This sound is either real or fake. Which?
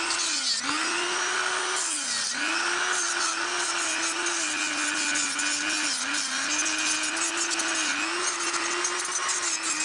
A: real